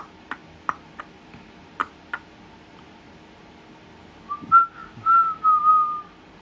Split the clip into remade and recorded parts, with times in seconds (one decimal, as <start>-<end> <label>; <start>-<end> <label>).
0.0-6.4 recorded